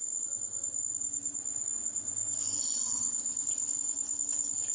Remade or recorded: recorded